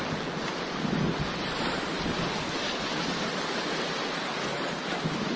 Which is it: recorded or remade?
recorded